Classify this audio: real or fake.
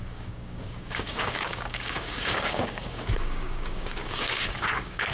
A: fake